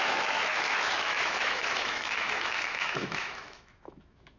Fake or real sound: fake